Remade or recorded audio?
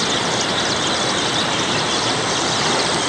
recorded